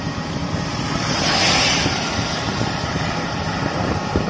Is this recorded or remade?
remade